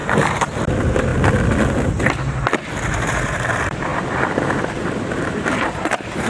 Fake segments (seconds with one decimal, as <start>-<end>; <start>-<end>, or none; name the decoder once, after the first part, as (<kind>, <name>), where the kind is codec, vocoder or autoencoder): 0.0-1.1 (vocoder, BigVGAN v2); 2.9-6.3